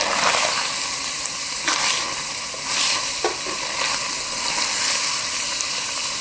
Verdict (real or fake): real